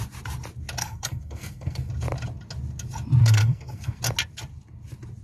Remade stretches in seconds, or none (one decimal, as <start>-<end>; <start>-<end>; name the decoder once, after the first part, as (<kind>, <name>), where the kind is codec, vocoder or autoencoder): 0.8-1.9 (codec, SNAC); 3.2-4.0